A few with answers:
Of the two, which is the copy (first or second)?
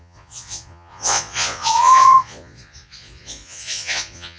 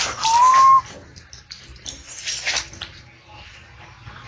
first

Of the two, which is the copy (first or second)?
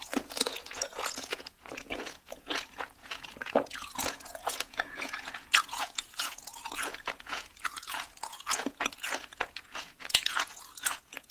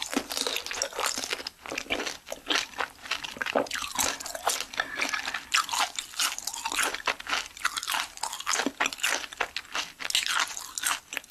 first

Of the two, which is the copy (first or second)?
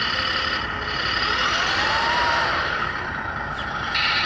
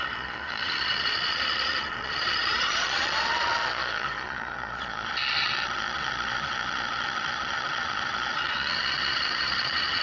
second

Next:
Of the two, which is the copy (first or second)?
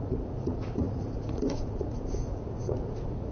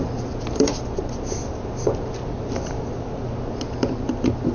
first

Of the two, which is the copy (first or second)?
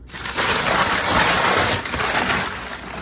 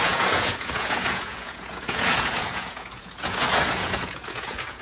second